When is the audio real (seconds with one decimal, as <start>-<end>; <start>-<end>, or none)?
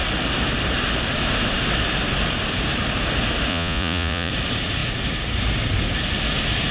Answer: 0.0-3.5; 4.3-6.7